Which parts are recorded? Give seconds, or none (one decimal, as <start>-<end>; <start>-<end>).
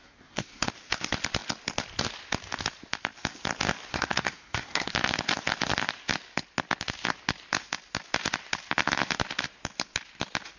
0.7-3.9; 4.9-10.6